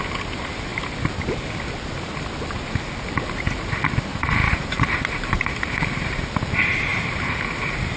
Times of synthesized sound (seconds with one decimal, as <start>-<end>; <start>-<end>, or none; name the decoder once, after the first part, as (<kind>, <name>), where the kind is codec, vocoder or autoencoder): 4.1-6.5 (vocoder, BigVGAN v2); 6.9-8.0